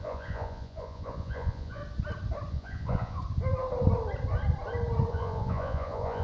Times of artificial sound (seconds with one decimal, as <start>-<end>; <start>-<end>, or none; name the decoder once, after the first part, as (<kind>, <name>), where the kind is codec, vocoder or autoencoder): 0.0-1.8 (vocoder, Vocos); 2.5-3.2; 5.1-6.2